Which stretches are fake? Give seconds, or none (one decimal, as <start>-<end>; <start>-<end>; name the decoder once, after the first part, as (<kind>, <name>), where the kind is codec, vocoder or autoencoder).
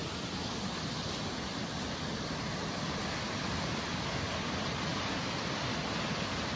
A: 0.0-4.0 (vocoder, BigVGAN v2)